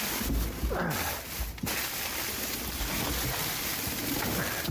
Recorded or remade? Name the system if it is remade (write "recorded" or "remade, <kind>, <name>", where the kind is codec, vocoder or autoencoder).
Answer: recorded